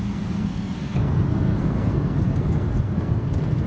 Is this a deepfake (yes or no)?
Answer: yes